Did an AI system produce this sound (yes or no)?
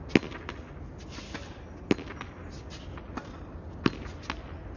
no